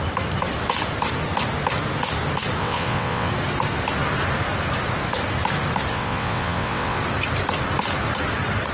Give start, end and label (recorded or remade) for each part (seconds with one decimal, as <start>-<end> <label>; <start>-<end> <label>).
0.0-2.6 recorded; 2.6-3.3 remade; 3.3-5.9 recorded; 5.9-7.0 remade; 7.0-8.7 recorded